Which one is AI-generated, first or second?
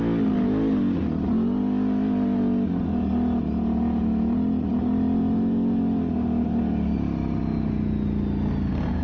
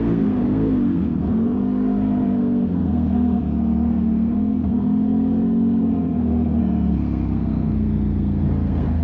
second